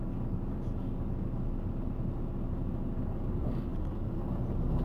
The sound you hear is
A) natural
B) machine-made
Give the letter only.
A